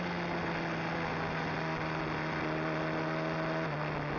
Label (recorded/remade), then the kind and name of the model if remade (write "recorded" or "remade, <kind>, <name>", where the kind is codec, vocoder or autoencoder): recorded